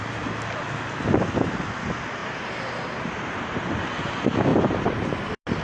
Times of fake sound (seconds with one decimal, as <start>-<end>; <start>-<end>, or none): 2.2-3.8; 4.5-5.1